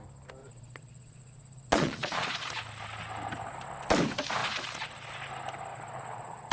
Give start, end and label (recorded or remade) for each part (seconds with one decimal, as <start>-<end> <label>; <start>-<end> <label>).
0.0-0.4 recorded; 0.4-2.5 remade; 2.5-5.7 recorded; 5.7-6.5 remade